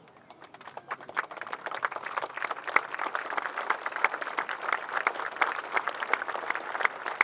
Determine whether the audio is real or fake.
real